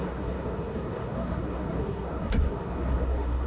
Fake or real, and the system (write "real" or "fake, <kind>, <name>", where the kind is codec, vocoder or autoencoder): fake, codec, SNAC